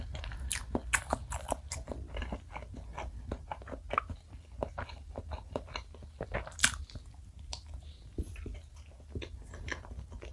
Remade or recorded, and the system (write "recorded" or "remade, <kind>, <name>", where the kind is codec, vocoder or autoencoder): recorded